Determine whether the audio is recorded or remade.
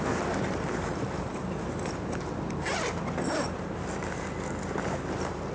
recorded